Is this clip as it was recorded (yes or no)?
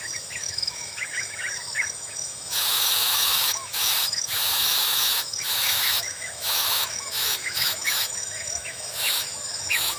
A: no